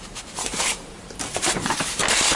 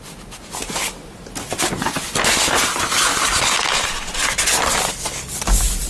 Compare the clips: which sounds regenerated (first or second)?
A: first